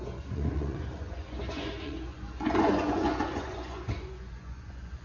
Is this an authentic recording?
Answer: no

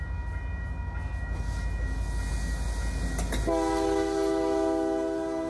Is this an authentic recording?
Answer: yes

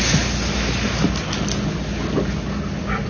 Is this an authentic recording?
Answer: yes